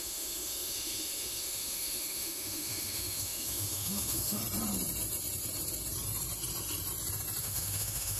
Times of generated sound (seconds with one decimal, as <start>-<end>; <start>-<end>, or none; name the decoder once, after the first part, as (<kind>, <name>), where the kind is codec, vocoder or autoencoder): 0.0-4.4 (autoencoder, DAC-VAE); 7.4-8.2